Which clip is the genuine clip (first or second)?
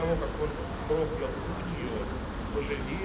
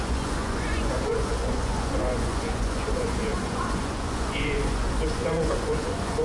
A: first